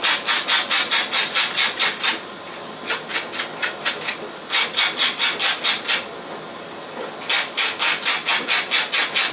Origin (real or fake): real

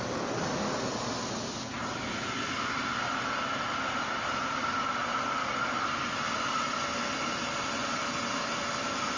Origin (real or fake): real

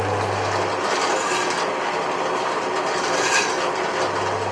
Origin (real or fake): real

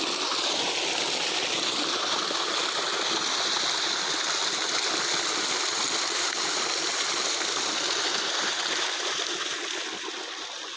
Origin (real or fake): real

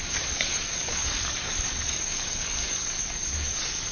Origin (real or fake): fake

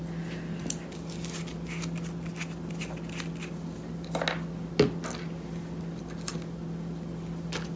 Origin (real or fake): real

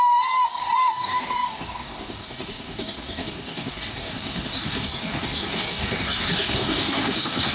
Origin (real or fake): fake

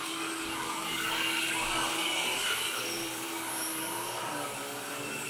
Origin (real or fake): fake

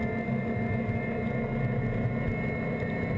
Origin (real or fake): real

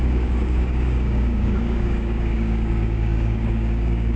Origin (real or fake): fake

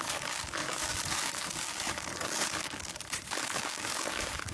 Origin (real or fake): fake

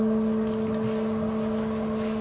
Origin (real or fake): real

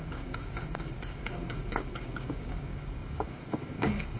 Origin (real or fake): fake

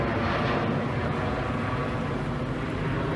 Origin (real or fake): real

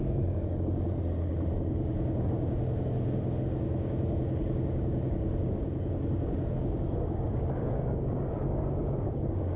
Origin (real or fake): fake